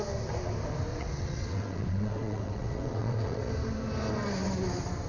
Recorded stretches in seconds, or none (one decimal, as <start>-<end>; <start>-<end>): 0.0-0.9; 3.5-5.1